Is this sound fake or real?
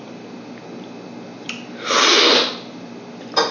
real